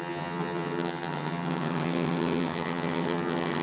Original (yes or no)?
no